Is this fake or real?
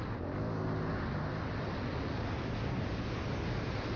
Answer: real